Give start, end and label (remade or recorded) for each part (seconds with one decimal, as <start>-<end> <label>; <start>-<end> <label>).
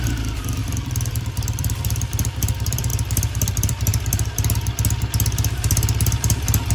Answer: 0.0-2.9 remade; 2.9-3.5 recorded; 3.5-3.9 remade; 3.9-6.7 recorded